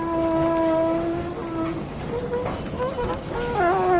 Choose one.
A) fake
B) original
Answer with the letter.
B